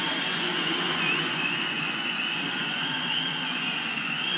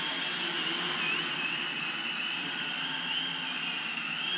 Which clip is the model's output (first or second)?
first